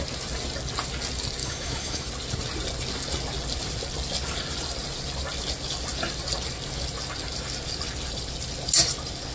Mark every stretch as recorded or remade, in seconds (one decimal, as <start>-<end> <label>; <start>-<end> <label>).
0.0-1.4 recorded; 1.4-2.1 remade; 2.1-9.3 recorded